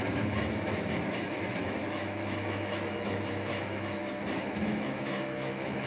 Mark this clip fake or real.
fake